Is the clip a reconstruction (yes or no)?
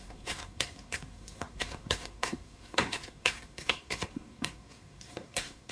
yes